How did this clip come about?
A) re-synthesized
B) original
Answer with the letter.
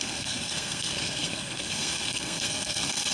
A